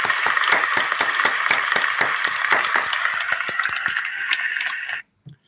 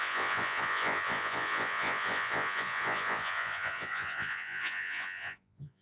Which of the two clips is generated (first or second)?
second